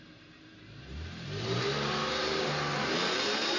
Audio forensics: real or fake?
fake